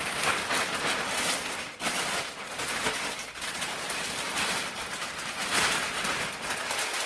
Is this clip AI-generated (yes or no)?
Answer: no